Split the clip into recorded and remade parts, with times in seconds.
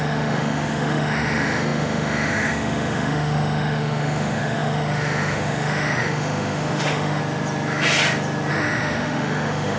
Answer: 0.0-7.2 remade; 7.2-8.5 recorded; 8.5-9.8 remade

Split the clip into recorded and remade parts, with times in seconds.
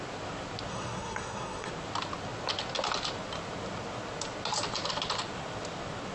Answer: 0.0-0.7 recorded; 0.7-1.7 remade; 1.7-6.1 recorded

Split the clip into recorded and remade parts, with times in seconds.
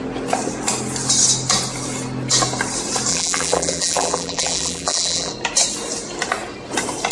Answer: 0.0-3.1 recorded; 3.1-5.3 remade; 5.3-7.1 recorded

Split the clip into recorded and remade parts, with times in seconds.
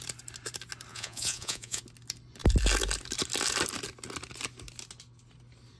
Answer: 0.0-0.9 recorded; 0.9-1.8 remade; 1.8-5.8 recorded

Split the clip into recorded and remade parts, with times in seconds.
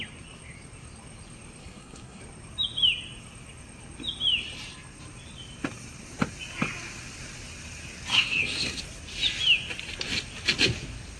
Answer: 0.0-1.6 recorded; 1.6-2.2 remade; 2.2-8.1 recorded; 8.1-8.8 remade; 8.8-11.2 recorded